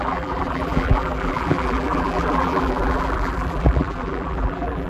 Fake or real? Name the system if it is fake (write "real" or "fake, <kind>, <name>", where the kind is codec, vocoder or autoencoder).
fake, vocoder, BigVGAN v2